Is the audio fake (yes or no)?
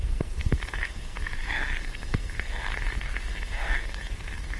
yes